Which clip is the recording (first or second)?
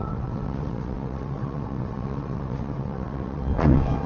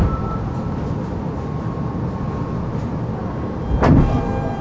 second